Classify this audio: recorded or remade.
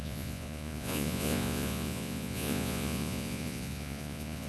remade